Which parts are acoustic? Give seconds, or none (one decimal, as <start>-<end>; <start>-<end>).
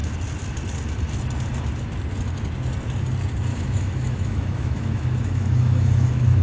0.0-3.5